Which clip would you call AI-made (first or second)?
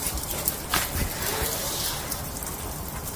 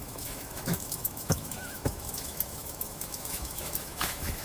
second